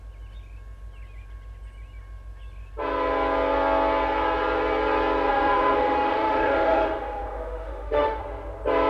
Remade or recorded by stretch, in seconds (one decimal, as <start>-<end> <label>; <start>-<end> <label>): 0.0-5.3 recorded; 5.3-8.2 remade; 8.2-8.9 recorded